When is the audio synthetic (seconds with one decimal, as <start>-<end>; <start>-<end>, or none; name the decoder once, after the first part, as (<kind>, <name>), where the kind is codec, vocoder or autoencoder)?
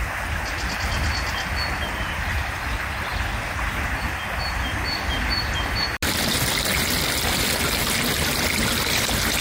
none